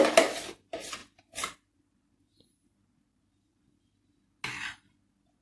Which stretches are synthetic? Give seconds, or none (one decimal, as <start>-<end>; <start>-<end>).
none

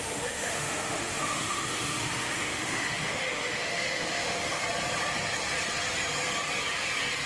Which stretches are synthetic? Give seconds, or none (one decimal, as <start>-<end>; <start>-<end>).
0.0-4.6

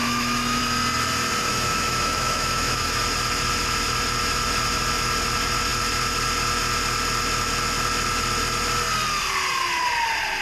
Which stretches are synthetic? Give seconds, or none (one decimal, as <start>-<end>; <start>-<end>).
0.0-0.6; 1.5-3.0